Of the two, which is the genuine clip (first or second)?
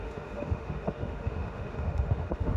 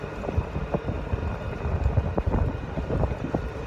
second